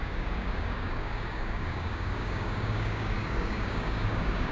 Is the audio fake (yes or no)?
yes